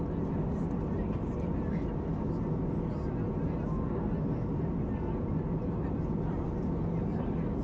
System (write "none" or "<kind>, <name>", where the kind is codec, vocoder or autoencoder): none